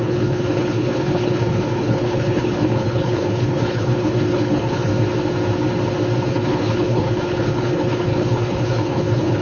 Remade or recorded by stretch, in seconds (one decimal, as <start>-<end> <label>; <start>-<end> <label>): 0.0-4.9 remade; 4.9-6.3 recorded; 6.3-9.4 remade